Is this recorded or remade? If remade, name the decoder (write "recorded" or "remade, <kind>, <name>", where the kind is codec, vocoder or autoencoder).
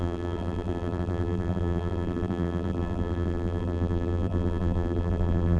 remade, vocoder, BigVGAN v2